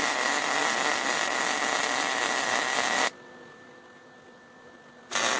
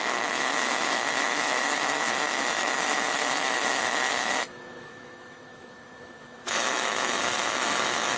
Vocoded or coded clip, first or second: second